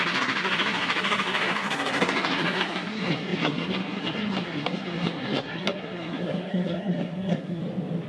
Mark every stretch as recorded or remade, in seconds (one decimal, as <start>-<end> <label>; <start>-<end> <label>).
0.0-7.6 remade; 7.6-8.1 recorded